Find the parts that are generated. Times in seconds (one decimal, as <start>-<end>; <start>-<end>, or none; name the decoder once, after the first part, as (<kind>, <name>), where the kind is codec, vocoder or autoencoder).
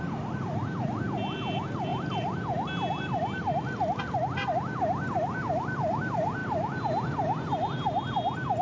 none